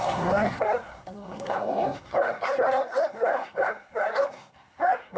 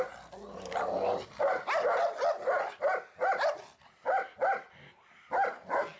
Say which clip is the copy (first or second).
first